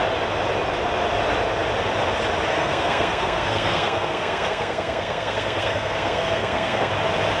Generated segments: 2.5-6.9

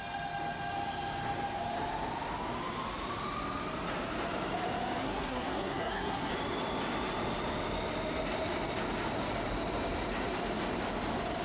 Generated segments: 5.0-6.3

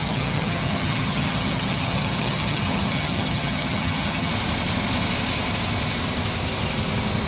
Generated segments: 0.0-4.3